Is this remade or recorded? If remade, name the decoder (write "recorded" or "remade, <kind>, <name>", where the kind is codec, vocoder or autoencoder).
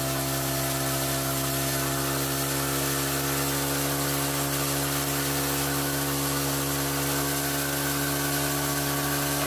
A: recorded